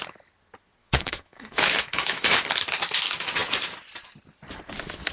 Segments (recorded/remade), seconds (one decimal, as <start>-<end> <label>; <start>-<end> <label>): 0.0-0.8 recorded; 0.8-2.4 remade; 2.4-5.1 recorded